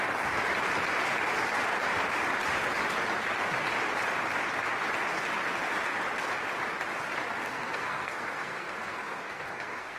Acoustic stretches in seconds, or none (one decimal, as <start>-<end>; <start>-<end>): 0.0-7.4